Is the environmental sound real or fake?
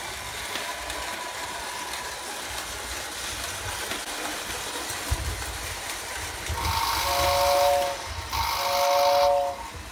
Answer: real